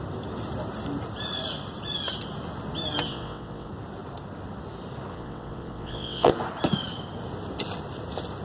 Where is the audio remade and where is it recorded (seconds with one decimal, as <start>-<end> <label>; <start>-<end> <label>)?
0.0-3.1 recorded; 3.1-3.7 remade; 3.7-5.1 recorded; 5.1-6.3 remade; 6.3-8.4 recorded